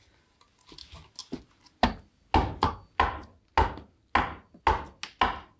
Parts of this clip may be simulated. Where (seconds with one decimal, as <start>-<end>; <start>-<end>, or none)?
none